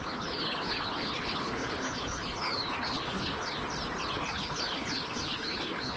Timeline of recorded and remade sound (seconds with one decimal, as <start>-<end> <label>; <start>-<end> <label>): 0.0-3.6 remade; 3.6-4.1 recorded; 4.1-6.0 remade